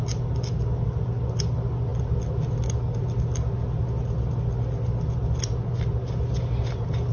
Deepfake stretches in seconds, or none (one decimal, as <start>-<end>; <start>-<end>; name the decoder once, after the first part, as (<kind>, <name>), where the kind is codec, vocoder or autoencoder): none